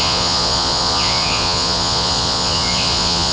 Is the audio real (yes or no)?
no